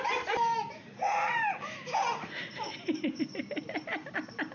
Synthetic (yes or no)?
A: no